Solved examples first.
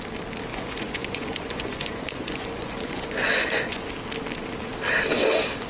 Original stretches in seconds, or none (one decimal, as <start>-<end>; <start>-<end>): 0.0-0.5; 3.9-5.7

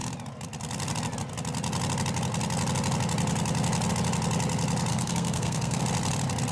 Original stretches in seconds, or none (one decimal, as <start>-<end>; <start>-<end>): 0.0-4.9; 5.8-6.5

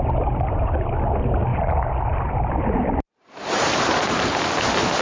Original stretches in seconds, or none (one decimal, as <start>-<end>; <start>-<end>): 0.0-1.5; 4.5-5.0